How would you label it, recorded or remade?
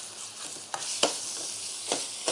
recorded